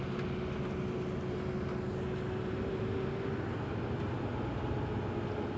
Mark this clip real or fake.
real